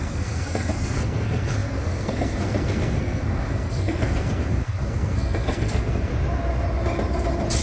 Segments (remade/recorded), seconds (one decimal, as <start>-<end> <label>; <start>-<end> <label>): 0.0-6.1 remade; 6.1-7.6 recorded